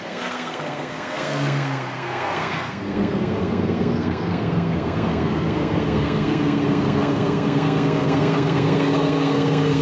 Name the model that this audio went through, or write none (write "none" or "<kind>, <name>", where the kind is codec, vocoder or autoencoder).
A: codec, SNAC